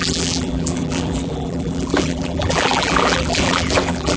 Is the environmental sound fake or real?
fake